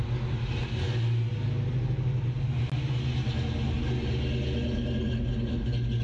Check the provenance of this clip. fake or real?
real